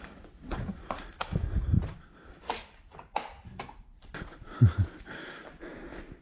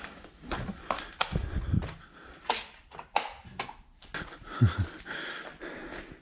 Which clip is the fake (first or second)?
first